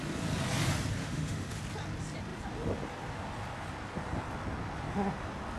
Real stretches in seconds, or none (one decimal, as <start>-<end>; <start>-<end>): 0.0-1.0; 1.6-5.6